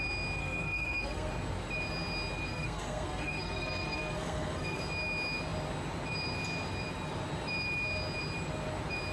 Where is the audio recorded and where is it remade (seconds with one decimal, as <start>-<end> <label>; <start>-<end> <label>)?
0.0-0.4 recorded; 0.4-1.3 remade; 1.3-2.5 recorded; 2.5-4.8 remade; 4.8-9.1 recorded